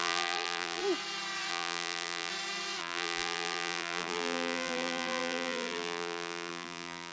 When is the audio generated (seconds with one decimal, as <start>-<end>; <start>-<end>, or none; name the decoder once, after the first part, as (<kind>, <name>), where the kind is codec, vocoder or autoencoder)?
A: 0.0-0.8 (vocoder, BigVGAN v2); 1.5-2.3; 2.8-7.1